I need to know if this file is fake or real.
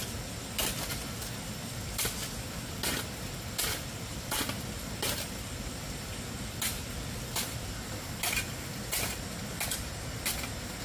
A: real